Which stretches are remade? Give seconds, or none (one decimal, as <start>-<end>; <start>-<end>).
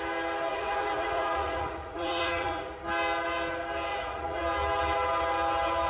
0.5-2.7; 3.9-4.4